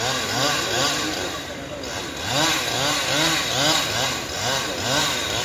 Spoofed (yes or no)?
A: yes